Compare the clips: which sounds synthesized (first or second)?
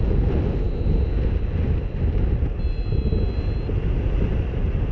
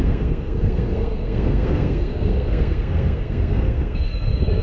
second